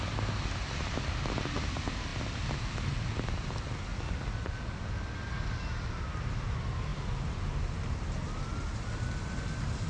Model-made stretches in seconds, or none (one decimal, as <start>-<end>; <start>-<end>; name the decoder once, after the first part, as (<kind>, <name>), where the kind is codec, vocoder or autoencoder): none